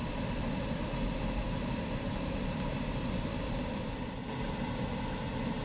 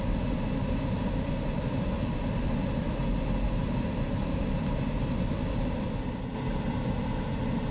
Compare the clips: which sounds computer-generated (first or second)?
first